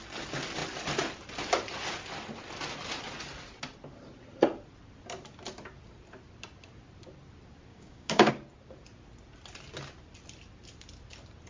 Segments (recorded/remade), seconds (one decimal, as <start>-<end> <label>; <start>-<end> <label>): 0.0-7.7 recorded; 7.7-8.3 remade; 8.3-11.5 recorded